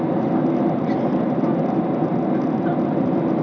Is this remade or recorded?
recorded